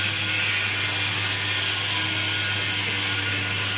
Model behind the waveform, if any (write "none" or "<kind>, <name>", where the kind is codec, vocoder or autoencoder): none